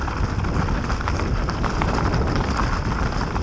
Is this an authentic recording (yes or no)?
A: yes